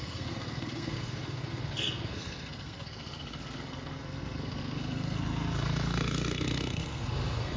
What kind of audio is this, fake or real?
fake